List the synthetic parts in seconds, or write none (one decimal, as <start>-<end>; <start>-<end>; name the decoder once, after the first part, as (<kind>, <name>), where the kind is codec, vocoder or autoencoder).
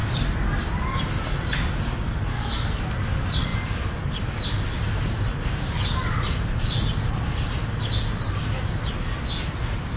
2.3-2.8 (codec, SNAC)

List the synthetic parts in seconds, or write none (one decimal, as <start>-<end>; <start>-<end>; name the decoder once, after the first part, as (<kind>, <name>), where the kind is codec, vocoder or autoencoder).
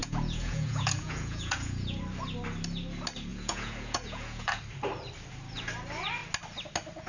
0.0-2.0 (vocoder, Vocos); 3.3-4.6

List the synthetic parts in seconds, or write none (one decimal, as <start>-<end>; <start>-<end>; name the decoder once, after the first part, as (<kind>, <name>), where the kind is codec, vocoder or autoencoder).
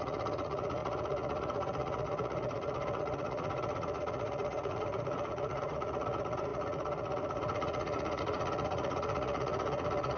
0.0-10.2 (vocoder, Vocos)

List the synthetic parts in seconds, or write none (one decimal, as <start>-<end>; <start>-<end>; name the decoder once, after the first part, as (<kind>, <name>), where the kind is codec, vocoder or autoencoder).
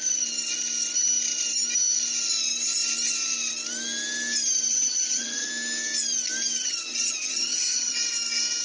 4.7-5.5 (vocoder, HiFi-GAN); 6.6-8.0